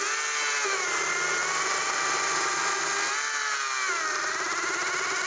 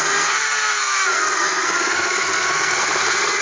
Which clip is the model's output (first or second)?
second